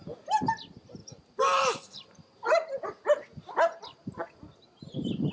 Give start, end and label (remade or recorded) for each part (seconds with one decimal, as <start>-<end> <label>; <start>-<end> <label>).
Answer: 0.0-1.0 recorded; 1.0-4.2 remade; 4.2-5.3 recorded